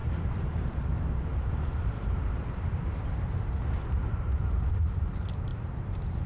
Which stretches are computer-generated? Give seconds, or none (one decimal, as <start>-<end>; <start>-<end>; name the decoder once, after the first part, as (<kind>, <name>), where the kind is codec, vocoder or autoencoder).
0.0-0.9 (vocoder, BigVGAN v2); 1.3-5.1; 5.5-6.3